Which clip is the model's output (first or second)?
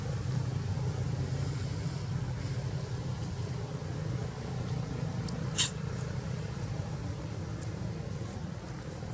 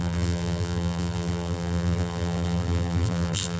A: second